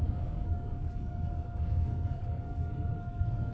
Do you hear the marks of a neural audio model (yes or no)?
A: yes